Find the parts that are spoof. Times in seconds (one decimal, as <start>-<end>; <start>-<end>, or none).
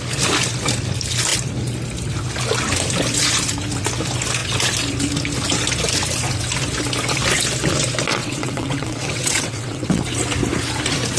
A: 8.1-10.0